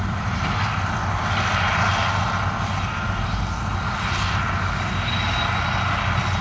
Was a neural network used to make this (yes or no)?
no